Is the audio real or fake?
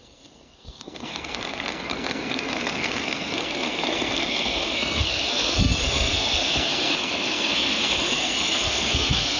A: fake